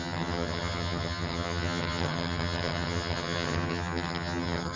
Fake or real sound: fake